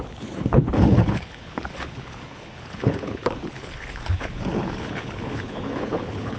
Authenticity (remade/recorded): remade